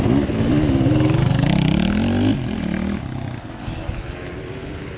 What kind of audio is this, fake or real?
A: real